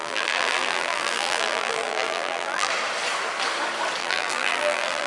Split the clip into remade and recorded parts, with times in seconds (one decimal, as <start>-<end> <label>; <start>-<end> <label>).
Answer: 0.0-2.7 remade; 2.7-4.0 recorded; 4.0-5.1 remade

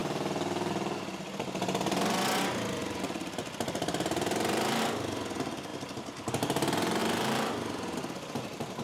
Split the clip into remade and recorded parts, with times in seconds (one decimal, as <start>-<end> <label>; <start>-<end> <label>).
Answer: 0.0-0.7 remade; 0.7-2.8 recorded; 2.8-4.8 remade; 4.8-5.7 recorded; 5.7-6.3 remade; 6.3-7.0 recorded; 7.0-8.8 remade

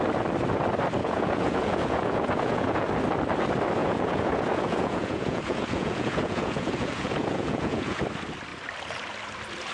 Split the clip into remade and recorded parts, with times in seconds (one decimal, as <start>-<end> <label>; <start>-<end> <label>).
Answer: 0.0-1.0 recorded; 1.0-2.9 remade; 2.9-3.8 recorded; 3.8-8.0 remade; 8.0-9.7 recorded

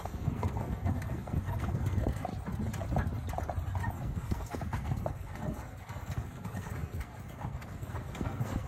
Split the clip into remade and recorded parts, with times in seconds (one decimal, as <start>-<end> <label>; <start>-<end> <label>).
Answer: 0.0-2.3 remade; 2.3-3.9 recorded; 3.9-8.7 remade

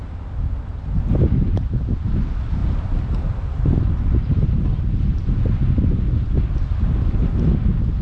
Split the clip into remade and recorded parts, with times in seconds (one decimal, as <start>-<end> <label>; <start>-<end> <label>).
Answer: 0.0-8.0 recorded

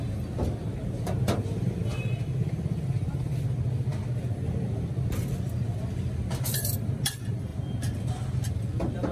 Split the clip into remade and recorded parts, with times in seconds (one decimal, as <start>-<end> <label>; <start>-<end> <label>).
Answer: 0.0-1.9 recorded; 1.9-3.5 remade; 3.5-6.2 recorded; 6.2-7.1 remade; 7.1-9.1 recorded

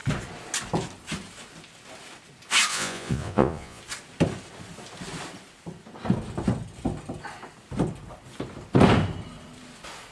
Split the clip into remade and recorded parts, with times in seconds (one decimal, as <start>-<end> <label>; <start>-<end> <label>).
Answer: 0.0-2.7 recorded; 2.7-3.8 remade; 3.8-10.1 recorded

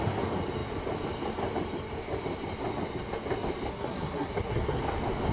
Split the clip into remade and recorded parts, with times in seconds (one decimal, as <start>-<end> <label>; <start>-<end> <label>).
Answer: 0.0-3.7 recorded; 3.7-4.8 remade; 4.8-5.3 recorded